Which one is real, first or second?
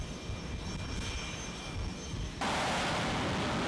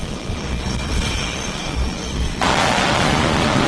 first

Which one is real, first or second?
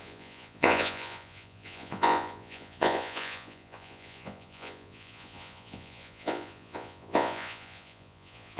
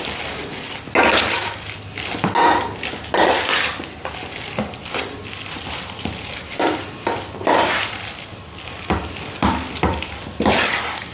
second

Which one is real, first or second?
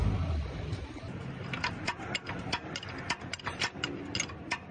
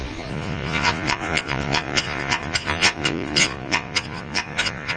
first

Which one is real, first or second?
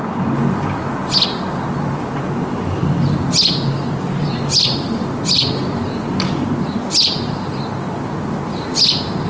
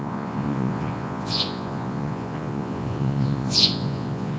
first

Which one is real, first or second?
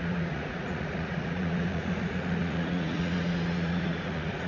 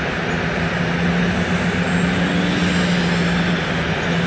second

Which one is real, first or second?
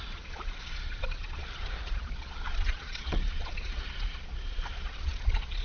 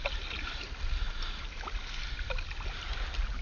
second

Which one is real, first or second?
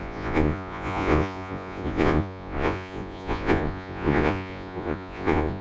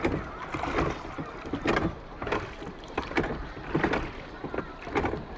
second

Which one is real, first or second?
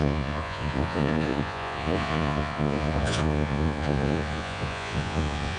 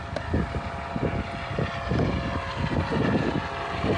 second